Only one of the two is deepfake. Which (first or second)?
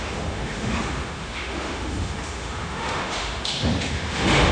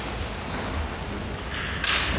first